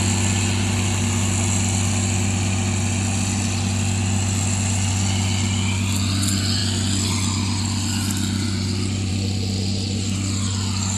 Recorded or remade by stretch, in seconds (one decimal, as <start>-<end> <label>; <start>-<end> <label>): 0.0-11.0 recorded